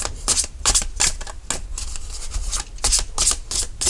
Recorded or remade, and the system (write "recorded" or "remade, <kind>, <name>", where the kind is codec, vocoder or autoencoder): recorded